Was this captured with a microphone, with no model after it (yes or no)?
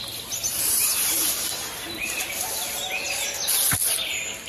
yes